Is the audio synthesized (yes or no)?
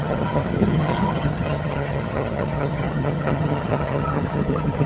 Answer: yes